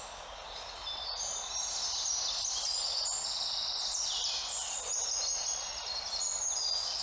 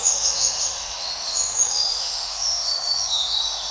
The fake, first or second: second